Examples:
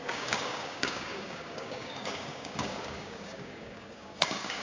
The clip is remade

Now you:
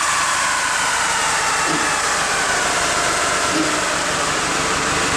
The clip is recorded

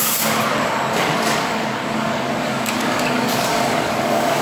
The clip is remade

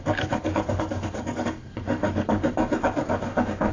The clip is remade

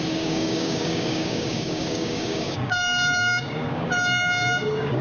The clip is remade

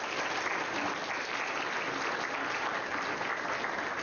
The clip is recorded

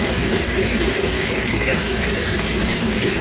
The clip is remade